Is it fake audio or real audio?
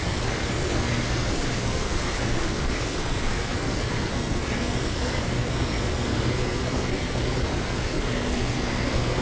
fake